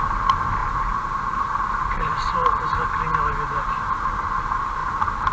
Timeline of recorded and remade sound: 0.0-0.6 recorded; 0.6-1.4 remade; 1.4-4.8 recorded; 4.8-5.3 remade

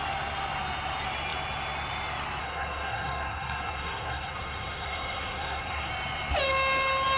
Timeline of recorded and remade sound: 0.0-2.4 recorded; 2.4-5.9 remade; 5.9-7.2 recorded

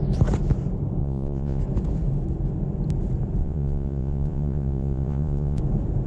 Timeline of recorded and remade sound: 0.0-1.0 recorded; 1.0-1.6 remade; 1.6-3.4 recorded; 3.4-5.6 remade; 5.6-6.1 recorded

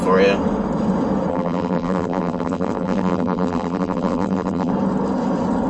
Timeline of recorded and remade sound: 0.0-1.3 recorded; 1.3-4.7 remade; 4.7-5.7 recorded

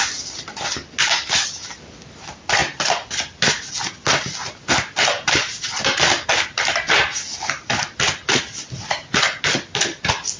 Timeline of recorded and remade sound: 0.0-10.4 recorded

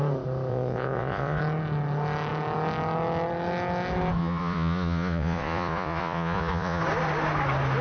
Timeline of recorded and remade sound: 0.0-0.5 recorded; 0.5-1.4 remade; 1.4-4.2 recorded; 4.2-6.8 remade; 6.8-7.8 recorded